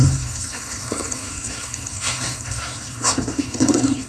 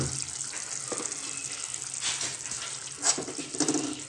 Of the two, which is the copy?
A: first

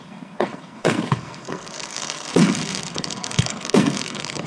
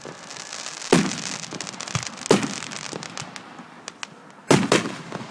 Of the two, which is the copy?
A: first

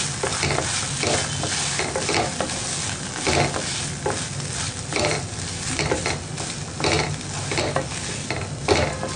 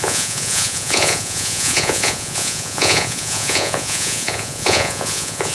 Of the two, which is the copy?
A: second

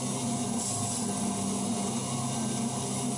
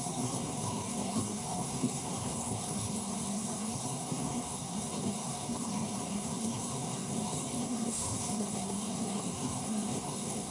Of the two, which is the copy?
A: second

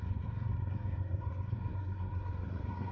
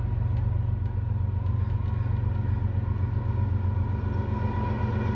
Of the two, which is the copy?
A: first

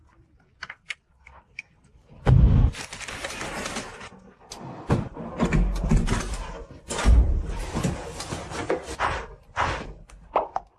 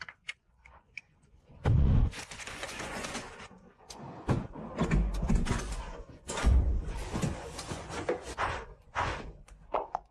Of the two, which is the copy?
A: second